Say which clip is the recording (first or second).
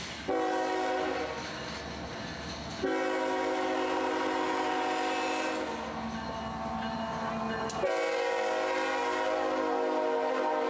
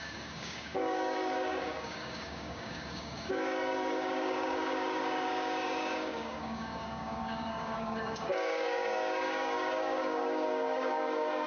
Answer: first